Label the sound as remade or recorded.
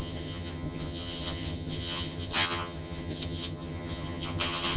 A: remade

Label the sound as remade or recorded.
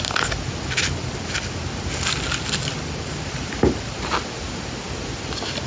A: recorded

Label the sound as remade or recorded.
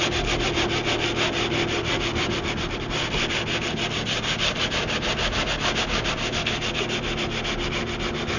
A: recorded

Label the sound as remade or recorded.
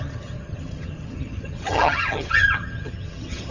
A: remade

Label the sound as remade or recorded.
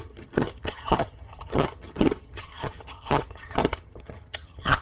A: remade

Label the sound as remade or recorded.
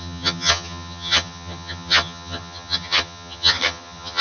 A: remade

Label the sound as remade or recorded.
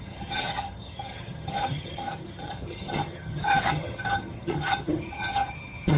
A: remade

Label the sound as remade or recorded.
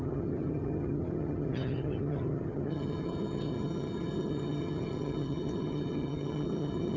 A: remade